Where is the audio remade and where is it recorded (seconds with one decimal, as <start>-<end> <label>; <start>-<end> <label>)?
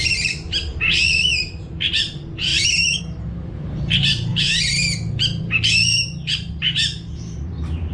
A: 0.0-4.3 remade; 4.3-5.4 recorded; 5.4-7.9 remade